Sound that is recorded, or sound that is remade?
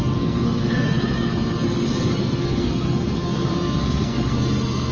remade